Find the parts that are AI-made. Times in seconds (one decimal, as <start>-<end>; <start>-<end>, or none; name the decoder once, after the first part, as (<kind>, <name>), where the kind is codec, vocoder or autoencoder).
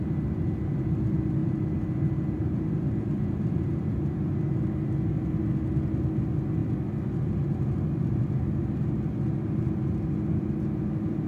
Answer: 1.4-2.6 (vocoder, BigVGAN v2); 3.1-4.5